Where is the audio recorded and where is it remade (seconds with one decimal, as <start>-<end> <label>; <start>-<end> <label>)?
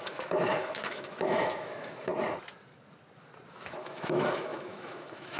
0.0-2.1 remade; 2.1-3.5 recorded; 3.5-5.4 remade